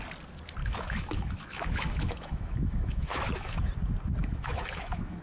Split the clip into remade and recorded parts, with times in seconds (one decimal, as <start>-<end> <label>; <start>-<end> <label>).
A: 0.0-0.6 recorded; 0.6-3.7 remade; 3.7-4.2 recorded; 4.2-5.2 remade